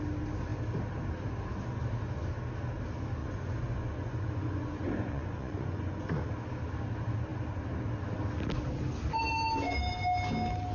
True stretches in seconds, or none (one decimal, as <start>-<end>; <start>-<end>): 0.0-3.2; 6.2-10.7